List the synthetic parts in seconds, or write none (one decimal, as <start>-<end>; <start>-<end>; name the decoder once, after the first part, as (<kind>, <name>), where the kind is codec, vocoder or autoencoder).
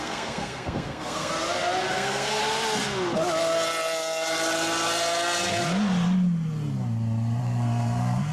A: 0.0-1.3 (codec, SNAC); 1.9-2.4; 7.4-8.3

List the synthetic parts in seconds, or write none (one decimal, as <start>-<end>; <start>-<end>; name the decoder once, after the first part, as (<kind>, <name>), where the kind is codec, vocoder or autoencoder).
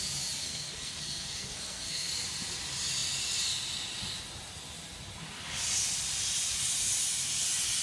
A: 0.4-2.1 (codec, SNAC)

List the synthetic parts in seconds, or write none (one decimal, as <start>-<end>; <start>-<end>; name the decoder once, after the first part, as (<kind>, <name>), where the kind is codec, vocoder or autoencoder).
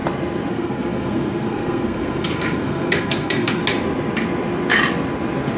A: 0.5-3.6 (codec, SNAC)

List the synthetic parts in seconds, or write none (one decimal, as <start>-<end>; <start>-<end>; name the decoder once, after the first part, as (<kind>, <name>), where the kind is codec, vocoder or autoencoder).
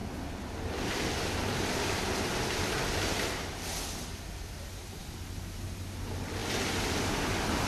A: none